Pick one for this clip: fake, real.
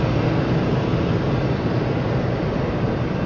real